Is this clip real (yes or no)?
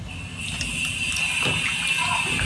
yes